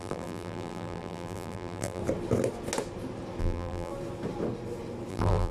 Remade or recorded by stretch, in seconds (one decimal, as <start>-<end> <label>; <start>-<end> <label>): 0.0-2.0 remade; 2.0-3.4 recorded; 3.4-3.9 remade; 3.9-5.1 recorded; 5.1-5.5 remade